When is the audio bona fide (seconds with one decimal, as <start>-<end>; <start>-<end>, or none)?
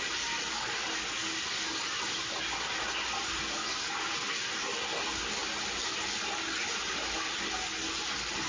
0.0-5.4; 5.9-8.5